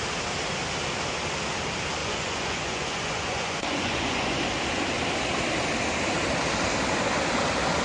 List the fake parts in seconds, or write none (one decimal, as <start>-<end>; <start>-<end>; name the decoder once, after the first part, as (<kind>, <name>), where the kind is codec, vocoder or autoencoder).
2.0-4.4 (vocoder, Vocos)